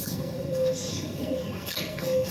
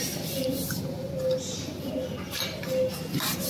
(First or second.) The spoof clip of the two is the first